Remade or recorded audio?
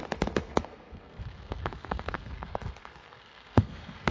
remade